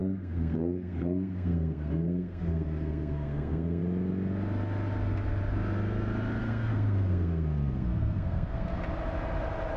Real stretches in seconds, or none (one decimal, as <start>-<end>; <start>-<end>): 3.8-6.4; 8.7-9.8